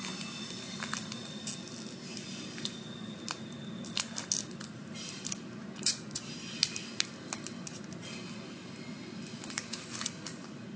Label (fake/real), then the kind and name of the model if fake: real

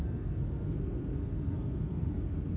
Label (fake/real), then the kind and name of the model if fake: fake, codec, SNAC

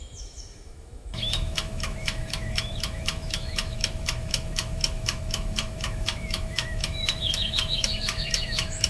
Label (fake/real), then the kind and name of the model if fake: fake, autoencoder, DAC-VAE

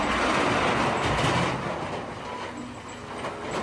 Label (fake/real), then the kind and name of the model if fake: real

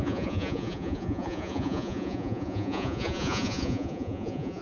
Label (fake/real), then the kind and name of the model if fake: fake, vocoder, Vocos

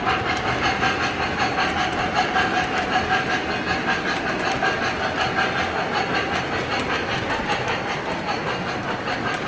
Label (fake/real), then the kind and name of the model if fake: real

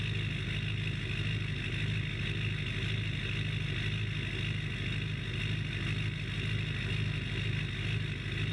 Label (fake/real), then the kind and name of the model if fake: real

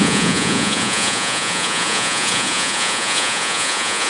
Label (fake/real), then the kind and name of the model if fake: fake, vocoder, Vocos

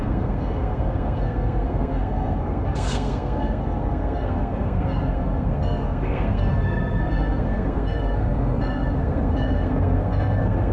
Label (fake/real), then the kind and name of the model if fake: fake, codec, SNAC